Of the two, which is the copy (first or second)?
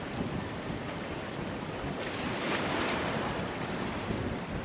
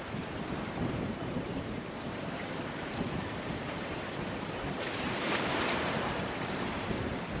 second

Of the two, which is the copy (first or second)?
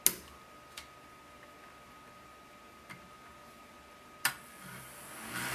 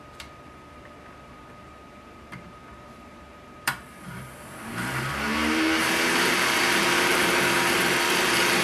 second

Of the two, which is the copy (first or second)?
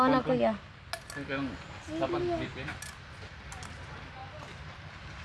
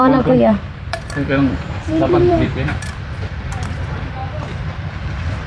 second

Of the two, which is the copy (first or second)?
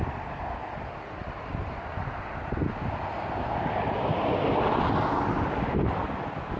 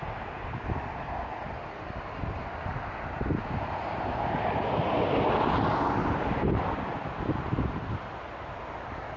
first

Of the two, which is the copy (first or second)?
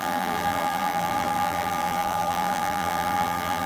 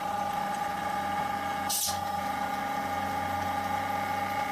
first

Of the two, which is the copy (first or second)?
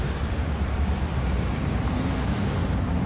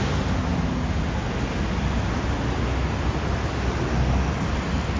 first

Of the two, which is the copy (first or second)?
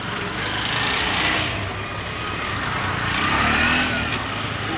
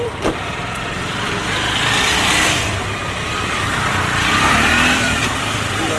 second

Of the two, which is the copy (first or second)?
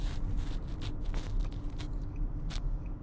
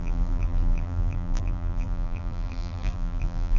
second